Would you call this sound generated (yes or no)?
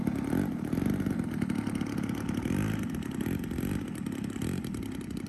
no